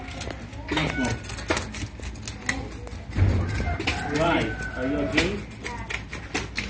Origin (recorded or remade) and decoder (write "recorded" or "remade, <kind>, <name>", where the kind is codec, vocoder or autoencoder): recorded